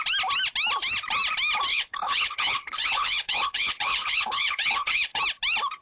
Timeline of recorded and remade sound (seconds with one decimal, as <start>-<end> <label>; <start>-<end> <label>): 0.0-1.7 recorded; 1.7-5.2 remade; 5.2-5.8 recorded